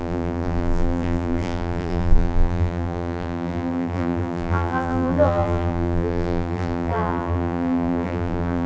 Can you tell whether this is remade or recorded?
remade